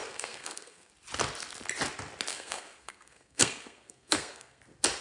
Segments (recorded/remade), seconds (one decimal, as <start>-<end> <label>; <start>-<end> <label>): 0.0-0.9 remade; 0.9-2.3 recorded; 2.3-4.6 remade; 4.6-5.0 recorded